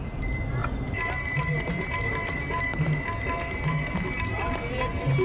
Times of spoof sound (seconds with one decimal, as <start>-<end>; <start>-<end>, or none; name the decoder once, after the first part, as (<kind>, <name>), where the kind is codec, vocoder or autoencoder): none